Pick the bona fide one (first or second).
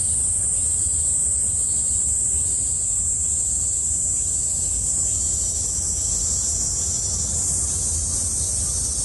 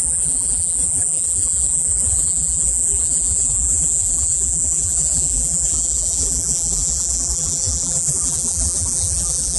first